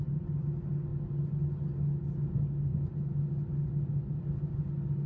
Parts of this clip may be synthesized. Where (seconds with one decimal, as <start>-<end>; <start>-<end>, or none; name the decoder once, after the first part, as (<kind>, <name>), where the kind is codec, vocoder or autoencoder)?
none